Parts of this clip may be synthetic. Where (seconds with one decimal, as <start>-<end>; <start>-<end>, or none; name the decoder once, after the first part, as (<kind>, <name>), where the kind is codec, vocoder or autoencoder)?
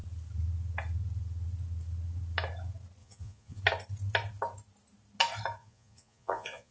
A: 3.0-3.6 (vocoder, Vocos); 5.6-6.7